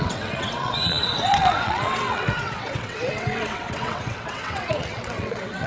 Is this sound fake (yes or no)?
yes